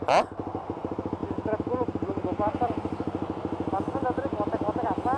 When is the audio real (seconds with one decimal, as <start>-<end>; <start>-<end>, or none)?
0.0-5.2